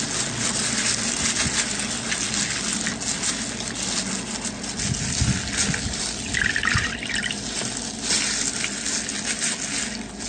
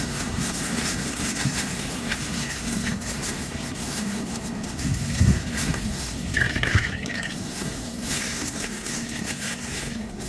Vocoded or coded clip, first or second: second